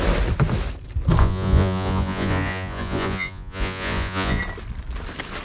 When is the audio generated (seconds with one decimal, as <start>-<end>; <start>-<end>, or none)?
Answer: 1.2-4.4